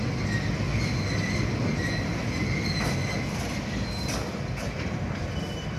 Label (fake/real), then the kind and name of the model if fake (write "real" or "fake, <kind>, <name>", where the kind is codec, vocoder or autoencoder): real